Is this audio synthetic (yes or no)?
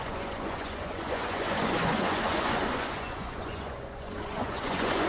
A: yes